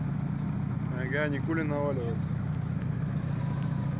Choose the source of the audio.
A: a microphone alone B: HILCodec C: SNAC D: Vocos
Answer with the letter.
A